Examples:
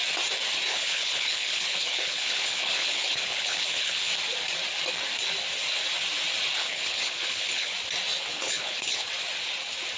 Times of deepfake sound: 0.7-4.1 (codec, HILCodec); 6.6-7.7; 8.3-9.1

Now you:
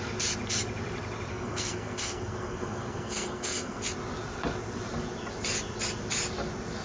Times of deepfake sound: 1.3-3.8 (codec, SNAC)

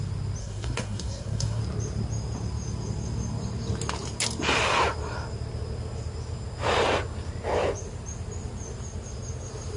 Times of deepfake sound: 0.4-1.6 (codec, SNAC)

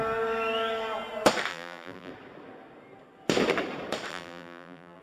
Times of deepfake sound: 1.5-2.1 (vocoder, BigVGAN v2); 4.1-5.0

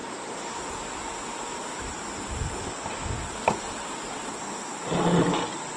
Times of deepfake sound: 0.0-1.8 (vocoder, BigVGAN v2)

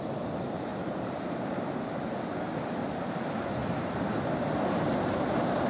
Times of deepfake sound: none

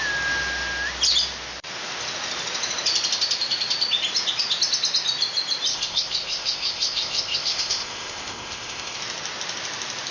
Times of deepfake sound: 5.7-9.0 (codec, ZipCodec)

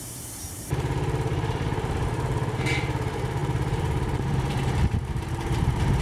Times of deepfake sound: 0.0-6.0 (vocoder, BigVGAN v2)